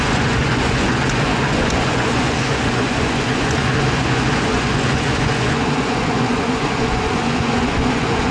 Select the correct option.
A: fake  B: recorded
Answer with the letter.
A